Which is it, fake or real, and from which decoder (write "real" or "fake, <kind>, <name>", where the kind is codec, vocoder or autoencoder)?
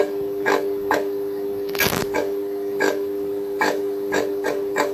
fake, codec, DAC